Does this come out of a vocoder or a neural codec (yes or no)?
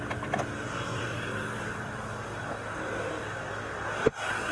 no